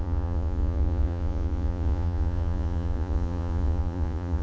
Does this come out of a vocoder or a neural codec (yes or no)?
yes